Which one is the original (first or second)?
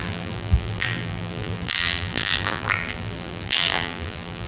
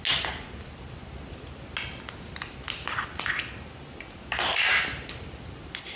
second